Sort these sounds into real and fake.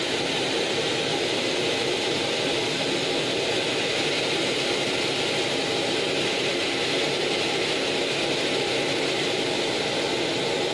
real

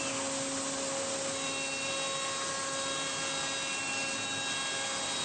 real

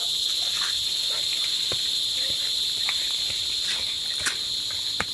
real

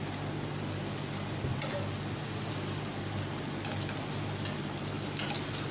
real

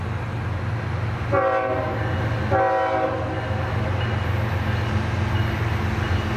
real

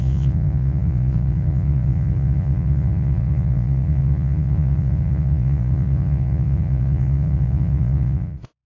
fake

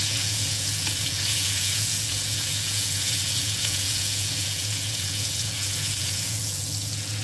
fake